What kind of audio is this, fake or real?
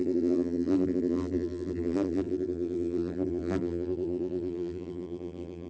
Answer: fake